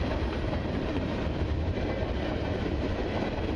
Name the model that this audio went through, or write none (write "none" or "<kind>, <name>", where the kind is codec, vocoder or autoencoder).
vocoder, BigVGAN v2